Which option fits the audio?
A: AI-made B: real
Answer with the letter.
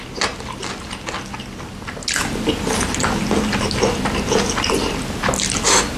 B